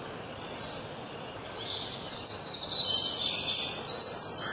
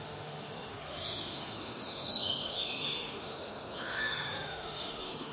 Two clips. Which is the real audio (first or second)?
first